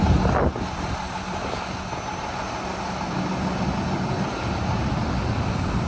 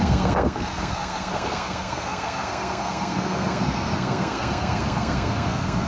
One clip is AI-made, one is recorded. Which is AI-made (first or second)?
second